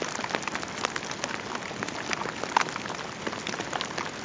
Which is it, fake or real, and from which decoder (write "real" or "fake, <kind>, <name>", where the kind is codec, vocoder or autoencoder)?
real